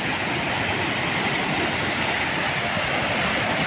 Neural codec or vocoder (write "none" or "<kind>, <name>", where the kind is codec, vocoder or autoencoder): none